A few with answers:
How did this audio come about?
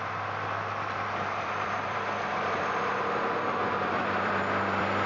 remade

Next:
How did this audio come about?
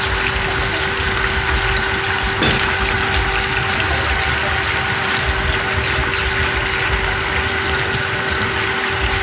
recorded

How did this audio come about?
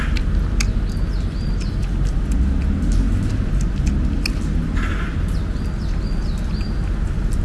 recorded